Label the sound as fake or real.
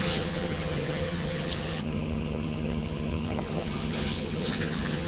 fake